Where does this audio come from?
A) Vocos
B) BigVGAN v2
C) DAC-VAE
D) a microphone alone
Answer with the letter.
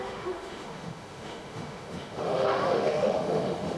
C